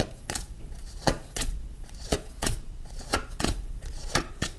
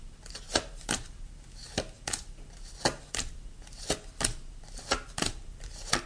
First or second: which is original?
second